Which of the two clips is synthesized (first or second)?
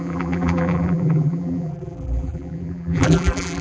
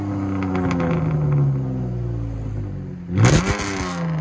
first